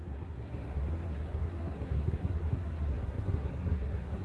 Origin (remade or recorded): remade